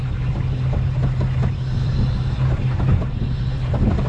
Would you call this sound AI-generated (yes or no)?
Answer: no